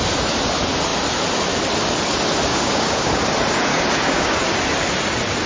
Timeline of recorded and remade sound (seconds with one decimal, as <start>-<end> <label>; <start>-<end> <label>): 0.0-2.5 recorded; 2.5-3.1 remade; 3.1-3.7 recorded; 3.7-4.4 remade; 4.4-5.5 recorded